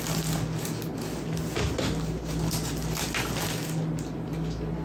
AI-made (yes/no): no